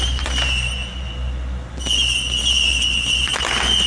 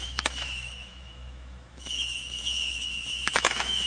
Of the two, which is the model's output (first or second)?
second